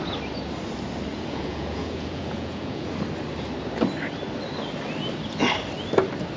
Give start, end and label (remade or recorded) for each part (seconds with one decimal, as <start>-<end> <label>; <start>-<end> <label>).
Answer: 0.0-1.1 recorded; 1.1-2.9 remade; 2.9-6.4 recorded